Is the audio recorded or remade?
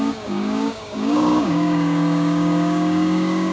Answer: remade